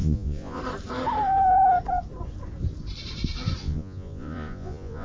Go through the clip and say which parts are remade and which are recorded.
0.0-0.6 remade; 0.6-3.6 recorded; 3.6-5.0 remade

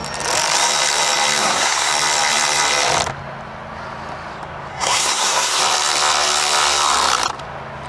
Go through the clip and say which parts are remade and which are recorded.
0.0-1.4 recorded; 1.4-1.9 remade; 1.9-4.7 recorded; 4.7-5.6 remade; 5.6-7.9 recorded

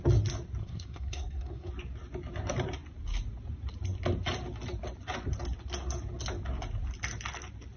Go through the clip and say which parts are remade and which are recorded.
0.0-0.6 recorded; 0.6-1.7 remade; 1.7-7.8 recorded

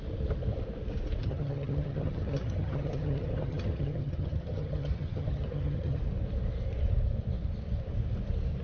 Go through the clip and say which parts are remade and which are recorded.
0.0-1.2 recorded; 1.2-6.0 remade; 6.0-8.6 recorded